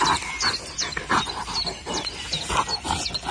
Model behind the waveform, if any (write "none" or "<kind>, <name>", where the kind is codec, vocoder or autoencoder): none